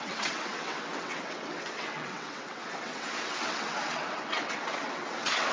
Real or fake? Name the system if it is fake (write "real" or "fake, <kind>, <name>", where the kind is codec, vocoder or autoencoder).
fake, vocoder, WaveNeXt